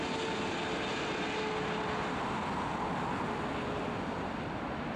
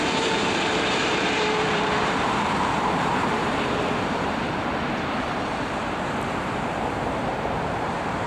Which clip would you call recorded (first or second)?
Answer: first